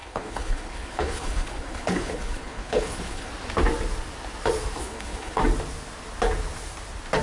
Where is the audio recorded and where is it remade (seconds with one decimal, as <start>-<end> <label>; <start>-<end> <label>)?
0.0-3.3 remade; 3.3-4.8 recorded; 4.8-5.4 remade; 5.4-7.2 recorded